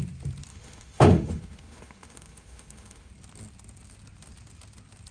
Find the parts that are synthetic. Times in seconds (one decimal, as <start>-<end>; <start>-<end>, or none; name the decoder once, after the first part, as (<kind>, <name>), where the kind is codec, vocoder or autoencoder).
0.5-3.1 (autoencoder, DAC-VAE)